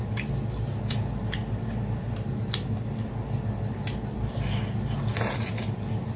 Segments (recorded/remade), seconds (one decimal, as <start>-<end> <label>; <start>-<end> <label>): 0.0-6.2 recorded